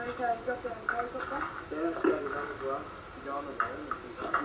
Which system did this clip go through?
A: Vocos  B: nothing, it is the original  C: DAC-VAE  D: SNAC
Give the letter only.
B